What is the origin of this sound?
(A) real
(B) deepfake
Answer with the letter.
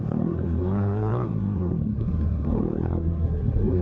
B